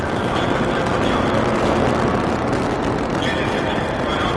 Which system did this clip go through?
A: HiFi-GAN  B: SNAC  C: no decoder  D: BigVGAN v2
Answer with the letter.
C